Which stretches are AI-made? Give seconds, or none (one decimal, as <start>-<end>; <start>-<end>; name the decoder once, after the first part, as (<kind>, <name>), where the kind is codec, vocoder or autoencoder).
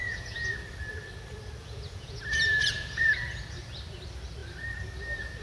0.0-0.5 (vocoder, Vocos); 1.6-2.2; 2.6-3.1